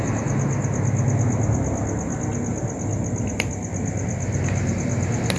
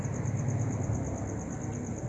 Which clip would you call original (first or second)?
first